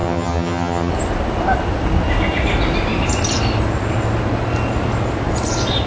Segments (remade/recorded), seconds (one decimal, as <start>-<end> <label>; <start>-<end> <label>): 0.0-0.9 remade; 0.9-5.9 recorded